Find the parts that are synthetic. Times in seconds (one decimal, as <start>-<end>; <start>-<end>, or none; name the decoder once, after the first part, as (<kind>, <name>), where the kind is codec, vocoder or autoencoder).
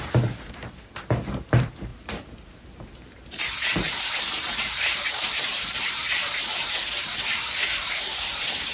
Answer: 0.0-8.7 (vocoder, BigVGAN v2)